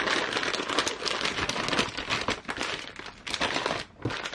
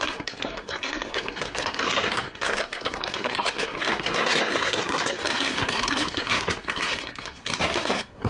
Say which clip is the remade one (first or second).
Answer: second